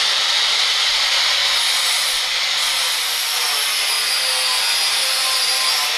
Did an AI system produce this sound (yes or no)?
no